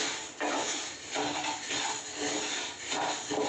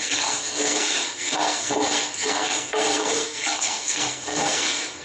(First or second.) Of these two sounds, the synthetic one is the second